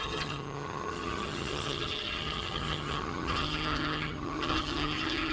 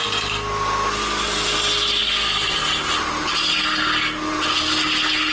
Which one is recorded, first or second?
second